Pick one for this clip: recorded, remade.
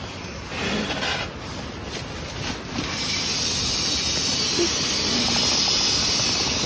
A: recorded